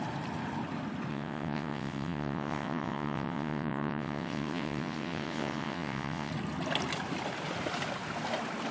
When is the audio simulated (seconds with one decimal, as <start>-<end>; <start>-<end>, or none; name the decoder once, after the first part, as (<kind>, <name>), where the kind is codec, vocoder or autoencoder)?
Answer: 1.1-6.3 (vocoder, WaveNeXt)